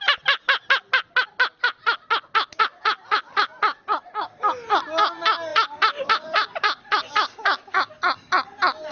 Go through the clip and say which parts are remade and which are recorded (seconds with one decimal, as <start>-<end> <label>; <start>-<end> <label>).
0.0-5.5 recorded; 5.5-7.1 remade; 7.1-8.9 recorded